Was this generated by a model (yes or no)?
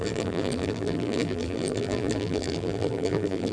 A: yes